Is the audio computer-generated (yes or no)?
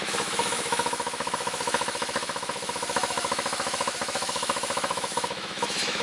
yes